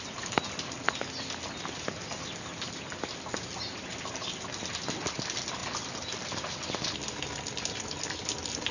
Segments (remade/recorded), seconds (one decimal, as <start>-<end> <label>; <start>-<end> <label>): 0.0-8.7 recorded